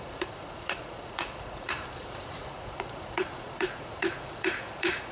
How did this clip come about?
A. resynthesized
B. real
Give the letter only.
A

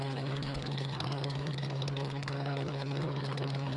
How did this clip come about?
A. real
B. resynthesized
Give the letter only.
B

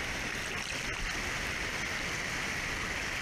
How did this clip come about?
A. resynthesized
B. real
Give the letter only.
B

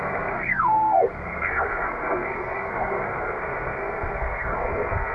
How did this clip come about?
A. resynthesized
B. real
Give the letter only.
A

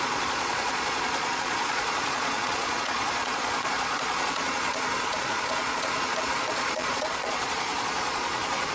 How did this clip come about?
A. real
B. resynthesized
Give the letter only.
B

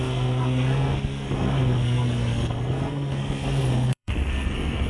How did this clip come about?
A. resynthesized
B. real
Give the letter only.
A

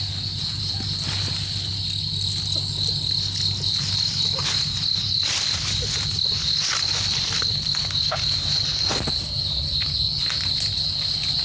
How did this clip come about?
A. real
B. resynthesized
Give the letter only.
A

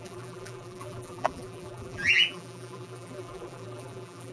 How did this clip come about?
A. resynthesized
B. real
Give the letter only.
A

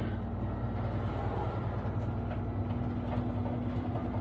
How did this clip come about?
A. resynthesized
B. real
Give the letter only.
B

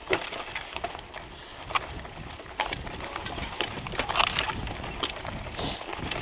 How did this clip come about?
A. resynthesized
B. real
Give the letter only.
B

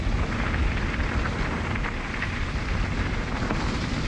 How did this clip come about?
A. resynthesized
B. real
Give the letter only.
B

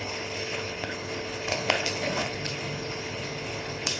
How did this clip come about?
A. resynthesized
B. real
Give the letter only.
A